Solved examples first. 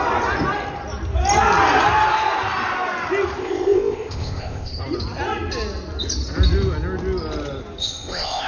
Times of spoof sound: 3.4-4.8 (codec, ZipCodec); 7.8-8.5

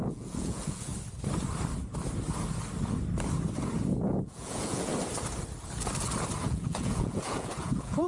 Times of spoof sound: 0.0-0.9 (vocoder, Vocos); 4.1-4.9; 6.4-8.1

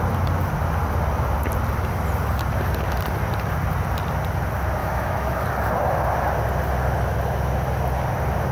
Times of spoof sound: 4.8-5.4 (autoencoder, DAC-VAE)

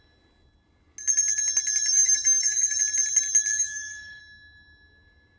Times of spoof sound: 1.9-2.8 (codec, DAC); 3.5-4.2